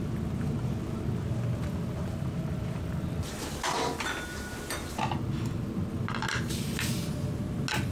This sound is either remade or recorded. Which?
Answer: recorded